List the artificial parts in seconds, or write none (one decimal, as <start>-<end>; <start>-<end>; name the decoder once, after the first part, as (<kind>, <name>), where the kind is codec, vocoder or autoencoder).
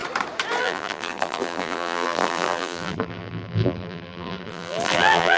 0.6-5.4 (vocoder, BigVGAN v2)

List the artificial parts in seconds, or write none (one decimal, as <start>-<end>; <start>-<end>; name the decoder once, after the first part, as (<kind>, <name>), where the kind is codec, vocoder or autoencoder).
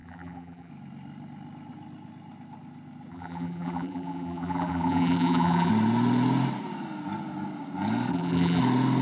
0.0-0.7 (vocoder, BigVGAN v2); 3.1-5.7; 8.1-8.6